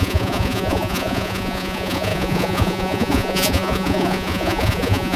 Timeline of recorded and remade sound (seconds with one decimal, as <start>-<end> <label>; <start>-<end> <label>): 0.0-5.2 remade